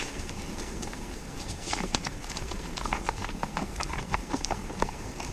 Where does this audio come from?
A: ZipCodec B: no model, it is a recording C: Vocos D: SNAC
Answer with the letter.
D